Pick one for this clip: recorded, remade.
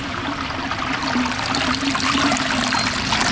recorded